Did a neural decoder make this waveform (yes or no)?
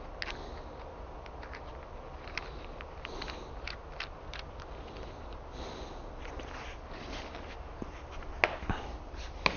no